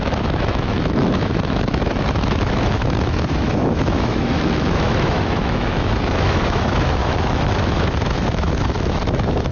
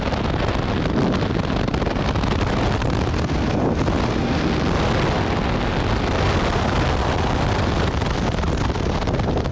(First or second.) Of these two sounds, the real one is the second